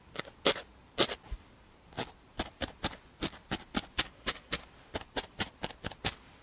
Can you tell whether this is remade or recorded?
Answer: recorded